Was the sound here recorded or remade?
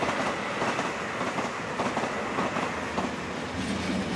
recorded